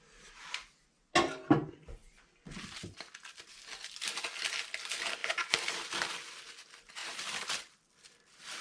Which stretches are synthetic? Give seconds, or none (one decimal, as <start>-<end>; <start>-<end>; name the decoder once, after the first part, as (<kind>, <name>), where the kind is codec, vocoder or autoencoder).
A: 5.2-6.1 (vocoder, BigVGAN v2); 7.0-7.8